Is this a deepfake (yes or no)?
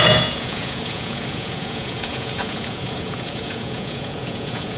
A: yes